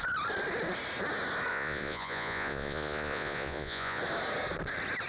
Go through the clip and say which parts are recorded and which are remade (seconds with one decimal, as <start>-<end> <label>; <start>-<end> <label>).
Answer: 0.0-1.5 recorded; 1.5-4.0 remade; 4.0-5.1 recorded